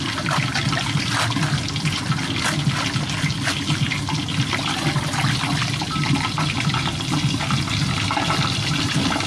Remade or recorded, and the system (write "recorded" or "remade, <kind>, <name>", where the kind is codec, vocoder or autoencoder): recorded